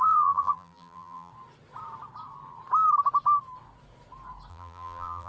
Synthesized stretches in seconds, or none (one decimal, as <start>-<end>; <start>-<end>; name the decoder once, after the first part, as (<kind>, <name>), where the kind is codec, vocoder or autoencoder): 0.0-1.3 (vocoder, BigVGAN v2); 4.5-5.3